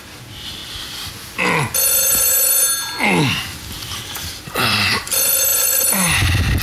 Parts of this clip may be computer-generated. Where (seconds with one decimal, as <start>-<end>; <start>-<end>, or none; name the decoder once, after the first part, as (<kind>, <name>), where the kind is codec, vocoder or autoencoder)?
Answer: 0.0-0.6 (vocoder, BigVGAN v2); 3.4-6.6